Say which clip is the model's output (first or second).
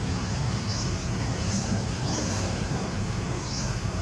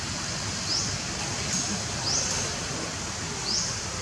first